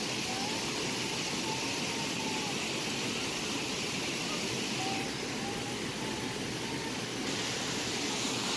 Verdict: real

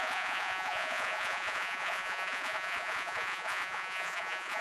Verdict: fake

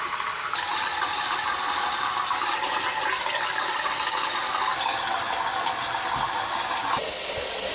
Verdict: real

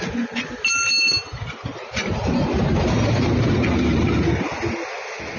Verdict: real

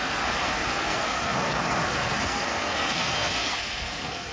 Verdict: fake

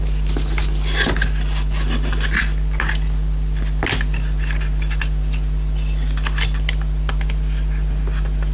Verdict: real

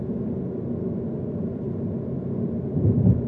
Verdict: real